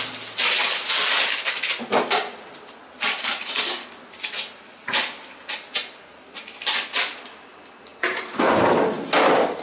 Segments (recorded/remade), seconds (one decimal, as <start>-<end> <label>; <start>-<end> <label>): 0.0-2.8 recorded; 2.8-5.4 remade; 5.4-7.9 recorded; 7.9-8.6 remade; 8.6-9.6 recorded